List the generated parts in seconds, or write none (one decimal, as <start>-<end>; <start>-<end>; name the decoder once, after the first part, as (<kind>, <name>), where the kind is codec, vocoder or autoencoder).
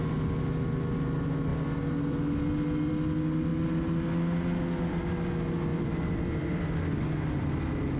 5.7-6.6 (vocoder, BigVGAN v2)